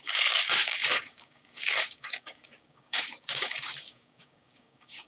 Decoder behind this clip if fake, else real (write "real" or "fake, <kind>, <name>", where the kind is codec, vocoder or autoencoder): fake, codec, DAC